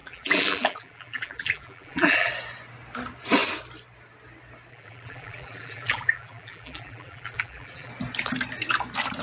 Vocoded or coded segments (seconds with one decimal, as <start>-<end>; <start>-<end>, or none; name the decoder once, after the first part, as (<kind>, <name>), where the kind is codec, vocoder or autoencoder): 0.0-2.3 (vocoder, BigVGAN v2); 4.7-7.9